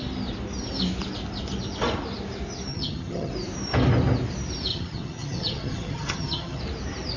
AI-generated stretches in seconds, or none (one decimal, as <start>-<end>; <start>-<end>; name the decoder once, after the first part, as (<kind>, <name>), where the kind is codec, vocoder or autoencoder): 2.7-3.3 (vocoder, HiFi-GAN); 4.7-6.6